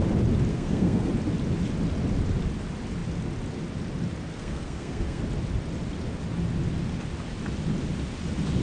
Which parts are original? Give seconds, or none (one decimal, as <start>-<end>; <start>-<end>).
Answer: 0.0-0.5; 1.1-4.3; 5.2-8.6